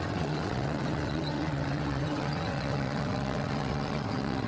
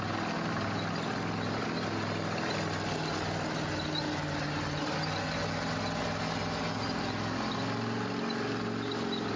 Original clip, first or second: second